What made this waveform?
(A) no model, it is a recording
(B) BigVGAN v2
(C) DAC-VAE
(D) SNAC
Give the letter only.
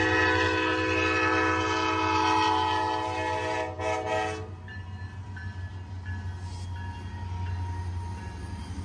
A